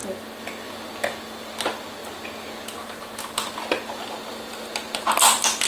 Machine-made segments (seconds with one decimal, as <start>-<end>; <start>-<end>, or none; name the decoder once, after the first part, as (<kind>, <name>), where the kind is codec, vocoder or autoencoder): none